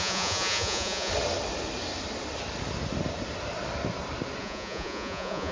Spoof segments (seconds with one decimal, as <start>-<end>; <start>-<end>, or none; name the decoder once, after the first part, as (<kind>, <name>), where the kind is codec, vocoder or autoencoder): 0.0-1.1 (vocoder, Vocos); 4.4-5.5